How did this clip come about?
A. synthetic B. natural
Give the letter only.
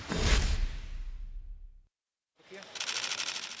B